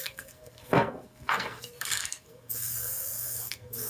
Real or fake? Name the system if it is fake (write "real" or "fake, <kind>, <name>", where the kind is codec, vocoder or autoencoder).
fake, codec, SNAC